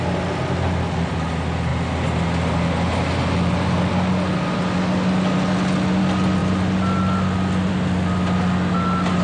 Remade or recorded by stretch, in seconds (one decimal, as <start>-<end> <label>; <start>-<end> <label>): 0.0-9.2 recorded